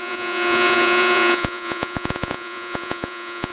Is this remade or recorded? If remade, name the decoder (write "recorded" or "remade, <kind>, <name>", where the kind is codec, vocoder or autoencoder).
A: remade, vocoder, Vocos